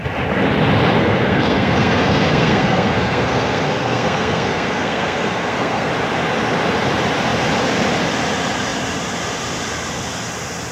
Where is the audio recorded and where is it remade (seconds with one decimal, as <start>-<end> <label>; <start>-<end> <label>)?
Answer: 0.0-1.0 recorded; 1.0-5.9 remade; 5.9-10.7 recorded